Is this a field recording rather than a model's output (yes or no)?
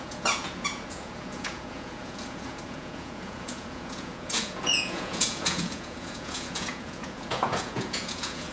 no